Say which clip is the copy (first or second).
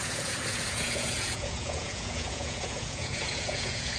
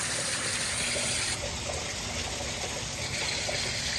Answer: first